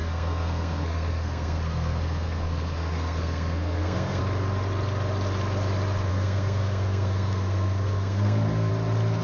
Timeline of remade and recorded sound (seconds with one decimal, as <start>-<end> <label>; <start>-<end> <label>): 0.0-4.2 remade; 4.2-6.1 recorded; 6.1-8.7 remade; 8.7-9.2 recorded

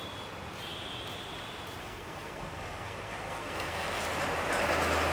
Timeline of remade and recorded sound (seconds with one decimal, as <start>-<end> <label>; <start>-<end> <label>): 0.0-1.8 recorded; 1.8-4.0 remade; 4.0-5.1 recorded

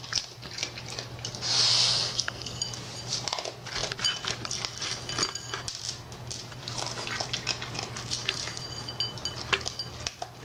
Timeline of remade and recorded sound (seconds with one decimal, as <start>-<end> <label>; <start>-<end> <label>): 0.0-1.7 recorded; 1.7-2.6 remade; 2.6-10.4 recorded

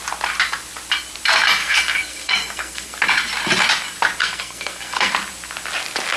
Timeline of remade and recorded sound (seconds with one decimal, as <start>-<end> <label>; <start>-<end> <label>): 0.0-1.6 recorded; 1.6-3.0 remade; 3.0-4.2 recorded; 4.2-5.1 remade; 5.1-6.2 recorded

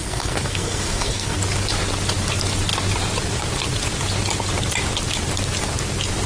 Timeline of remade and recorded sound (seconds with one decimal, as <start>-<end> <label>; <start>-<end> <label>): 0.0-1.4 remade; 1.4-6.3 recorded

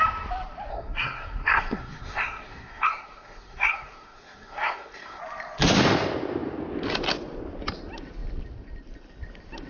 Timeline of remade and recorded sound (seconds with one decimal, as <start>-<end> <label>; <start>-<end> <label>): 0.0-0.7 recorded; 0.7-5.2 remade; 5.2-9.7 recorded

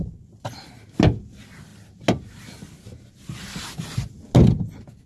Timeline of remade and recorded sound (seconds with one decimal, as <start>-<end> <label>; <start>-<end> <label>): 0.0-5.1 recorded

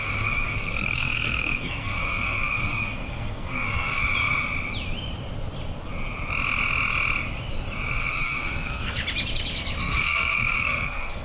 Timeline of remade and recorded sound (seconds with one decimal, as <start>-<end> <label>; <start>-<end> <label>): 0.0-4.0 remade; 4.0-7.9 recorded; 7.9-9.0 remade; 9.0-9.8 recorded; 9.8-11.2 remade